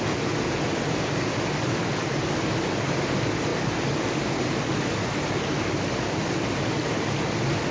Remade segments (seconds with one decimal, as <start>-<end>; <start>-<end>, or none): none